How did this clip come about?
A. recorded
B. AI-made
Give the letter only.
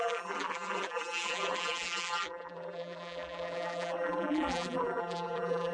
B